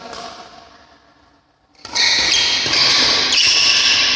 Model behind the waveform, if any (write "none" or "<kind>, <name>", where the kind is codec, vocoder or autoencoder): none